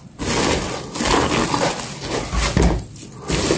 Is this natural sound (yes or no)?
yes